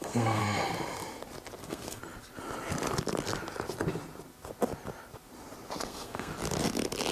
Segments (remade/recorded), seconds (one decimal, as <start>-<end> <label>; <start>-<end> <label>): 0.0-0.4 remade; 0.4-1.6 recorded; 1.6-2.0 remade; 2.0-5.8 recorded; 5.8-6.3 remade; 6.3-7.1 recorded